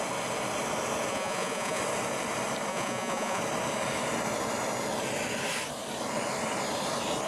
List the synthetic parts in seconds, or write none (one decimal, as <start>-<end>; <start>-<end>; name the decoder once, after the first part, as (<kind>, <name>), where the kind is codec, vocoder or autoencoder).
1.1-1.8 (vocoder, Vocos); 2.7-3.4